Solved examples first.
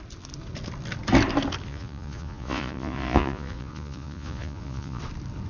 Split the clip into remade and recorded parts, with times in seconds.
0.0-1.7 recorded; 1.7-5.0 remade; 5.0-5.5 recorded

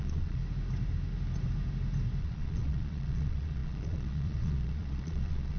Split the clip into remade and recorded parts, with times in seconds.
0.0-0.4 remade; 0.4-2.2 recorded; 2.2-5.6 remade

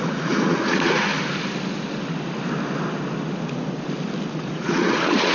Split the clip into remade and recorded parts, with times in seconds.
0.0-1.1 remade; 1.1-4.3 recorded; 4.3-5.3 remade

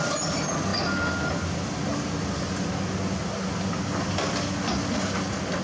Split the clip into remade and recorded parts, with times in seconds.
0.0-5.6 recorded

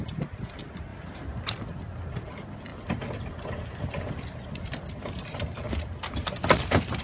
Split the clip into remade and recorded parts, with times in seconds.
0.0-7.0 recorded

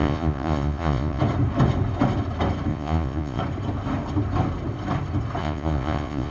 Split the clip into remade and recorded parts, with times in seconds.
0.0-1.2 remade; 1.2-2.7 recorded; 2.7-3.4 remade; 3.4-5.4 recorded; 5.4-6.3 remade